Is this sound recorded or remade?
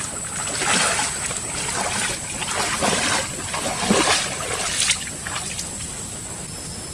recorded